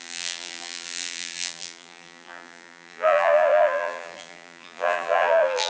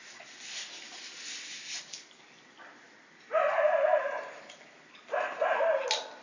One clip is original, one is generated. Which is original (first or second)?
second